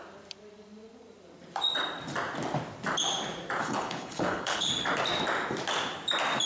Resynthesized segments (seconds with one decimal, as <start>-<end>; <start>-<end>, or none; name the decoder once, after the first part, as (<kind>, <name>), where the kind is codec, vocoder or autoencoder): 3.6-4.7 (codec, HILCodec)